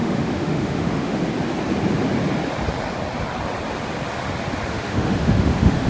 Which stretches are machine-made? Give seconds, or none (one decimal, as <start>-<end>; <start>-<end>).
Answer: 0.0-1.2; 4.7-5.9